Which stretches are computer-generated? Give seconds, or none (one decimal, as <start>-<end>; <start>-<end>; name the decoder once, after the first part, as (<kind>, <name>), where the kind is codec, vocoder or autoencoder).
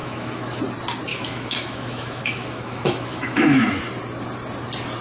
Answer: 0.0-0.6 (autoencoder, DAC-VAE); 1.1-3.8